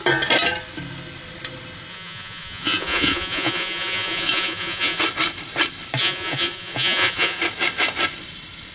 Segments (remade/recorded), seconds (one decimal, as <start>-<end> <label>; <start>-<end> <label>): 0.0-1.9 recorded; 1.9-5.0 remade; 5.0-6.0 recorded; 6.0-7.4 remade; 7.4-8.7 recorded